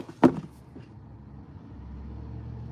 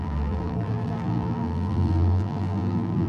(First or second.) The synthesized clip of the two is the second